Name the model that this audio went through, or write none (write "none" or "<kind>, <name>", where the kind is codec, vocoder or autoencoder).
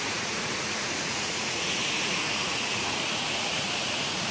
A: vocoder, Vocos